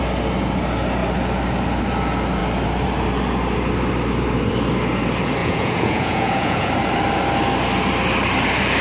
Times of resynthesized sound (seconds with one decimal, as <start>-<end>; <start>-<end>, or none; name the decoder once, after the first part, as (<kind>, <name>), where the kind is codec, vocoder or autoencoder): 5.4-6.7 (vocoder, Vocos)